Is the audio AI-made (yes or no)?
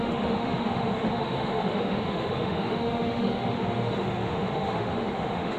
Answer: yes